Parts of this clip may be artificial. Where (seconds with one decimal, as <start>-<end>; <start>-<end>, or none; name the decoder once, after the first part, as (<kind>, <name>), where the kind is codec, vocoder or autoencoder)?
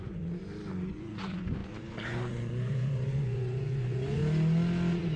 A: 0.0-0.4 (vocoder, Vocos); 0.9-4.2